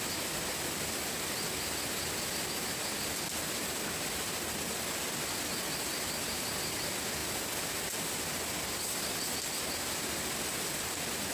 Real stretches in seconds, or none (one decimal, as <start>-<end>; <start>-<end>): 0.0-11.3